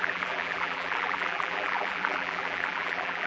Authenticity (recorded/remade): remade